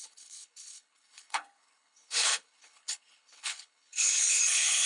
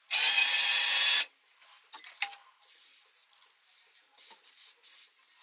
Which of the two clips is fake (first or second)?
first